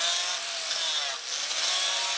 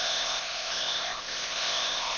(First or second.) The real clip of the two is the first